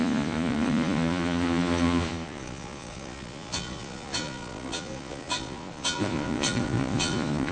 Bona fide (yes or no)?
no